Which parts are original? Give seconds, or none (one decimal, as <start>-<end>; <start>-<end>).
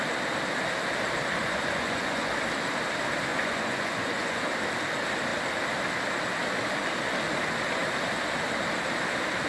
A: 0.0-1.4; 2.3-3.3; 4.4-9.5